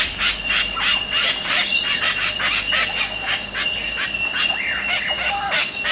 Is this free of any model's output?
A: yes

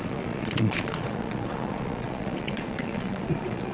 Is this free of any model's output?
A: no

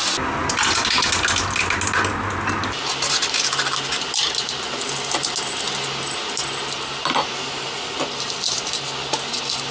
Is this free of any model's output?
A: yes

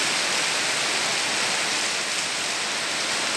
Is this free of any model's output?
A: yes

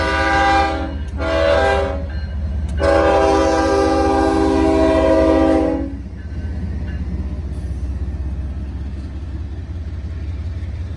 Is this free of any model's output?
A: yes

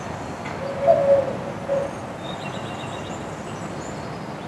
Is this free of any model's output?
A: yes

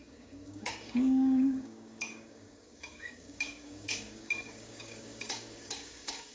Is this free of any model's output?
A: no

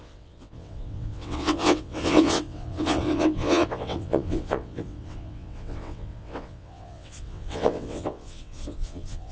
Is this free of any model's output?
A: no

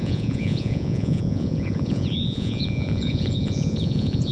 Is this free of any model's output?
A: no